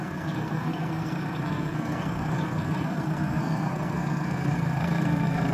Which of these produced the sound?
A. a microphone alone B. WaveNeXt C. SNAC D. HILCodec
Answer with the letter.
C